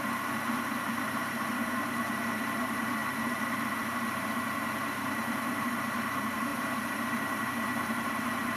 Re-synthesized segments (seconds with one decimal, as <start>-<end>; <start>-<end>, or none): 0.0-8.6